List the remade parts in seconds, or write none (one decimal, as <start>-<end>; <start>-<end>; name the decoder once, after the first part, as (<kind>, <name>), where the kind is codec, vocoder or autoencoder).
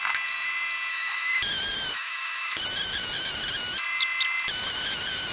0.9-1.4 (autoencoder, DAC-VAE); 1.9-2.6